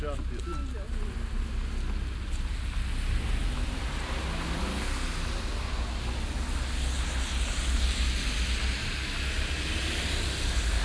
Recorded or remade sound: recorded